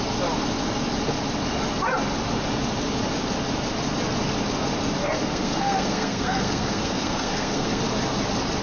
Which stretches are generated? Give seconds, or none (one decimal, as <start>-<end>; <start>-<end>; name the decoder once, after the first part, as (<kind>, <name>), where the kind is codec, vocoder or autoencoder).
5.0-7.8 (codec, SNAC)